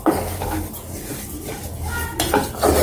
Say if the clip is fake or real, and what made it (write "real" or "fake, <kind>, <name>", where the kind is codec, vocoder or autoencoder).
real